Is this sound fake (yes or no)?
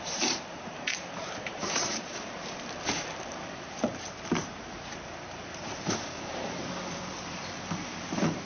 yes